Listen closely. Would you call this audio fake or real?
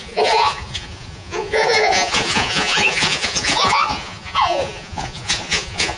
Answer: fake